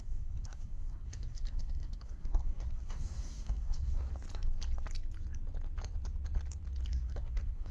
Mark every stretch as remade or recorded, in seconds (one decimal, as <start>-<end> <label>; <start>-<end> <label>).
0.0-4.1 remade; 4.1-6.9 recorded; 6.9-7.7 remade